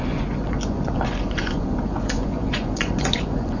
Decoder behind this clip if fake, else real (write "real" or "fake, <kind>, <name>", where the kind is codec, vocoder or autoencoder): fake, vocoder, Vocos